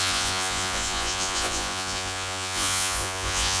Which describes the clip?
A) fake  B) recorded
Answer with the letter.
A